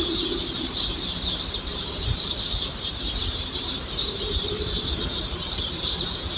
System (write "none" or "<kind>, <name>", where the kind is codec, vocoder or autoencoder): vocoder, BigVGAN v2